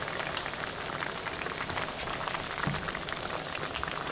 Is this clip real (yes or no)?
yes